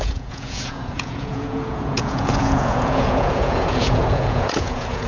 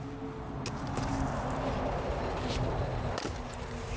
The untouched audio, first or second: second